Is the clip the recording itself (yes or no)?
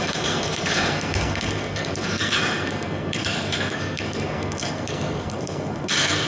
no